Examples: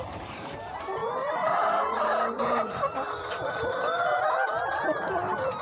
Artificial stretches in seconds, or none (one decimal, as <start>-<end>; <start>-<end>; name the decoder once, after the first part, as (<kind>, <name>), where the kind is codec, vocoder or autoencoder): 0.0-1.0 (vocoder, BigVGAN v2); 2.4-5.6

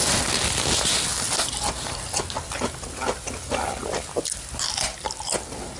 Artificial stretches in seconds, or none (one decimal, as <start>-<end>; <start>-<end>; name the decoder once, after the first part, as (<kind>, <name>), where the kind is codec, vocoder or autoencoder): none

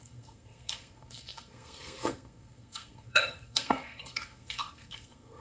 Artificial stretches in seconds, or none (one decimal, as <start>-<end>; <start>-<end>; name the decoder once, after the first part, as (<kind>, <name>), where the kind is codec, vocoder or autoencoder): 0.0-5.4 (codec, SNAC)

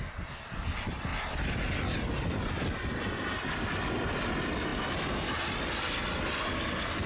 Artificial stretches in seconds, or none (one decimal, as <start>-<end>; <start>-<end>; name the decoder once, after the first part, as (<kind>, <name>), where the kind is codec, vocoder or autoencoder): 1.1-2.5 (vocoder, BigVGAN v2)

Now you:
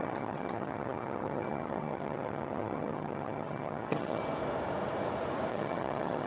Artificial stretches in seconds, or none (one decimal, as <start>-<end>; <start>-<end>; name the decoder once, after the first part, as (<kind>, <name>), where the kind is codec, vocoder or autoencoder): 0.0-4.2 (vocoder, HiFi-GAN); 5.5-6.3